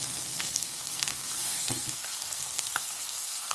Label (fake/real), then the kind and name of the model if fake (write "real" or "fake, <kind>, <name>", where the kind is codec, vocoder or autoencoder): fake, codec, SNAC